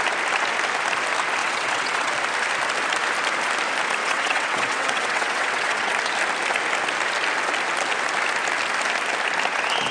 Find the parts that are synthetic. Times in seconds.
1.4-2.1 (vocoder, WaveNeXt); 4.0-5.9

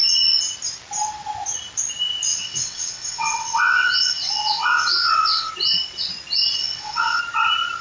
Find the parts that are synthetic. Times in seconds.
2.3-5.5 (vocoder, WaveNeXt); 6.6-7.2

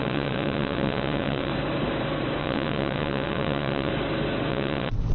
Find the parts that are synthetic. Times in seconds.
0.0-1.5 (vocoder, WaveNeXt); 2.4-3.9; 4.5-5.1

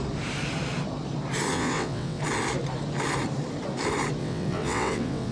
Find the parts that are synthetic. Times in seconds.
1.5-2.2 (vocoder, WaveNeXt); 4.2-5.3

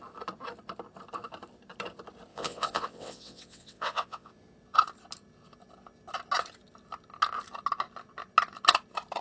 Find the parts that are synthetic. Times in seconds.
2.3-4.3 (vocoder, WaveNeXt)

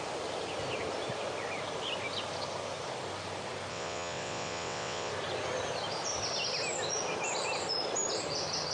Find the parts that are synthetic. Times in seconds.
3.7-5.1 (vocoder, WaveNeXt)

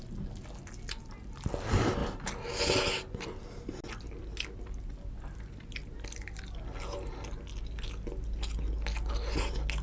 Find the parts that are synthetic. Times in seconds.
none